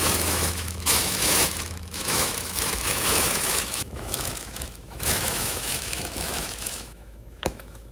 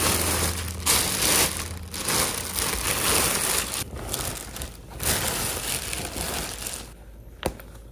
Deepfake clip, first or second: first